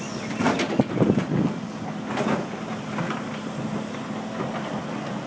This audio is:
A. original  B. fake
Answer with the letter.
A